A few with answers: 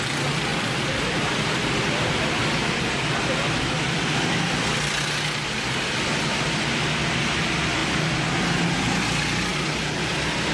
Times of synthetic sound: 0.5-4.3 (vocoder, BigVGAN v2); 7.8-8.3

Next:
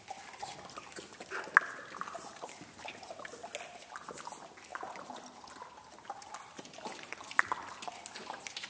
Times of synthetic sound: none